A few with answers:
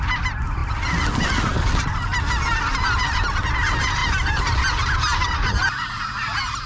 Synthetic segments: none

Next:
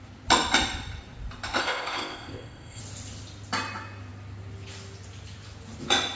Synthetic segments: 1.6-2.8 (codec, ZipCodec)

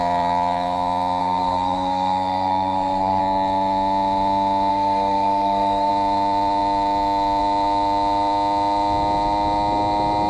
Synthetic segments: 1.2-3.2 (codec, SNAC); 4.7-5.9

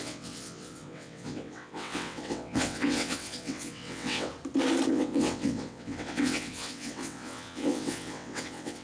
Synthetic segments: 0.0-4.3 (vocoder, WaveNeXt); 4.9-8.8

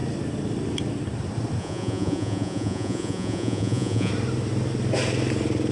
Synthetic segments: 1.6-4.1 (vocoder, Vocos)

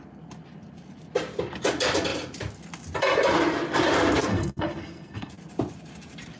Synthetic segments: 4.3-5.3 (codec, SNAC)